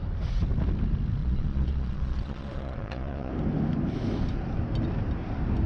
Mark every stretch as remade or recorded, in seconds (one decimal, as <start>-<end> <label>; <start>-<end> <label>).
0.0-1.2 recorded; 1.2-3.3 remade; 3.3-5.7 recorded